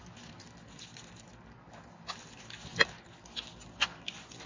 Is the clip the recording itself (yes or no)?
yes